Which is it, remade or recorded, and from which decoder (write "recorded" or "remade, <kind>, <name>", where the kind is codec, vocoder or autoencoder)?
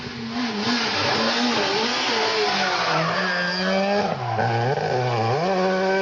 recorded